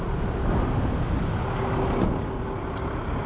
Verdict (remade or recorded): recorded